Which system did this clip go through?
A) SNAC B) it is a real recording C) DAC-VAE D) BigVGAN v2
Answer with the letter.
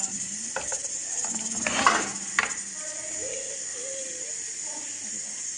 B